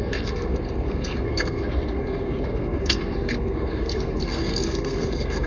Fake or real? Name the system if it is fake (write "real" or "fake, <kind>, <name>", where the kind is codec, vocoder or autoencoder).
fake, codec, SNAC